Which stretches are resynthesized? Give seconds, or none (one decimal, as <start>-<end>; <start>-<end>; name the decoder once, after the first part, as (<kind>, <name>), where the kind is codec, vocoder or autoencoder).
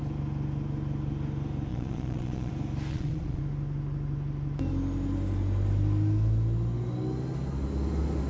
1.7-2.5 (vocoder, Vocos); 2.9-3.4